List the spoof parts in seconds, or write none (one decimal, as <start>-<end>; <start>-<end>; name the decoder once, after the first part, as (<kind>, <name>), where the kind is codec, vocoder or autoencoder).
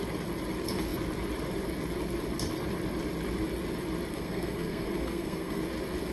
4.1-5.6 (codec, SNAC)